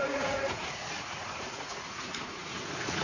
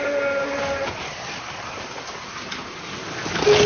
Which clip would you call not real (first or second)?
first